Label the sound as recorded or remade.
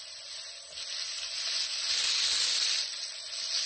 recorded